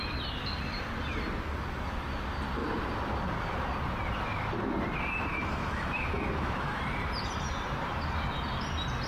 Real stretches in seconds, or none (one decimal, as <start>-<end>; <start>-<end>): 0.0-5.3; 6.8-9.1

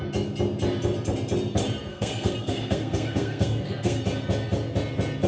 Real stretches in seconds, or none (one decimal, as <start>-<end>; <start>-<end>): 0.0-1.9; 4.0-5.3

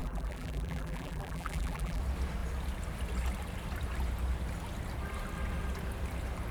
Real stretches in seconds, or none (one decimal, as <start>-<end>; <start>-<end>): 2.0-6.5